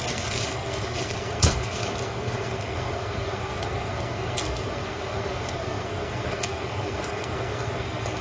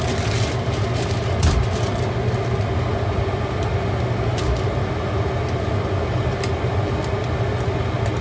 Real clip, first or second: second